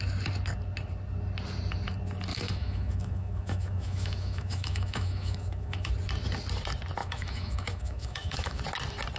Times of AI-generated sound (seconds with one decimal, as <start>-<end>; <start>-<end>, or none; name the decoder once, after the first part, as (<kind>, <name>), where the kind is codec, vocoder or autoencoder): 2.3-5.9 (autoencoder, DAC-VAE); 7.0-8.6